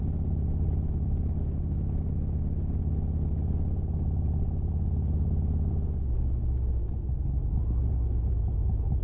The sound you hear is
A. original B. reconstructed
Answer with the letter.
A